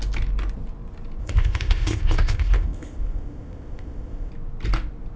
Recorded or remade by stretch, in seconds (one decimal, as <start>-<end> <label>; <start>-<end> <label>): 0.0-1.2 recorded; 1.2-4.3 remade; 4.3-5.2 recorded